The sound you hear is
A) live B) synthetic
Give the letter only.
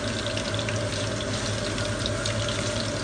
A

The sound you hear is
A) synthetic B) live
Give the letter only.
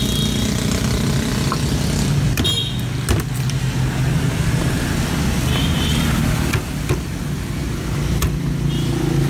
B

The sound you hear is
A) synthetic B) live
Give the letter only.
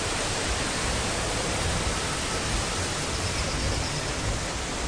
B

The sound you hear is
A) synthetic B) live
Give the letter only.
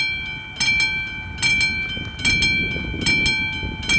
B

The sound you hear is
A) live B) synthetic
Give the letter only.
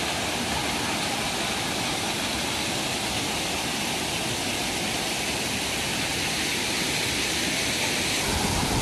A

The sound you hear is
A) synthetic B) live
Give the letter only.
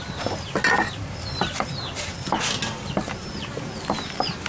B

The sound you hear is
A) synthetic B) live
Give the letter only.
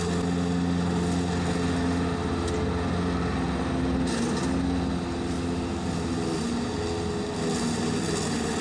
B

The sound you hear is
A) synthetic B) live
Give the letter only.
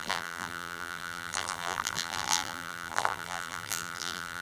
A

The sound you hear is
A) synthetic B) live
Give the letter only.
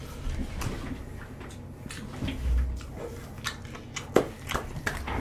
B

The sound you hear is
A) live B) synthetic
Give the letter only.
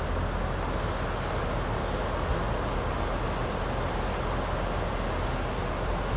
A